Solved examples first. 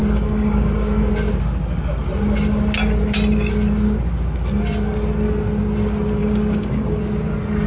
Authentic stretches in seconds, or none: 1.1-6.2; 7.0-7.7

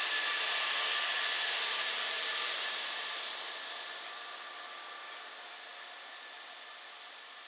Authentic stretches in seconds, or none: 0.0-1.1; 3.5-7.5

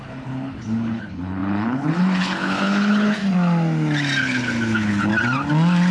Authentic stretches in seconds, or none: 3.2-4.2; 5.1-5.9